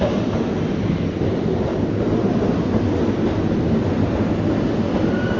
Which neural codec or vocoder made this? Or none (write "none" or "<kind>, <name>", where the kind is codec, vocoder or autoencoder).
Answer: none